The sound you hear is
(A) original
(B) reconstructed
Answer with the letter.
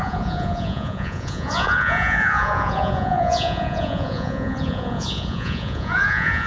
B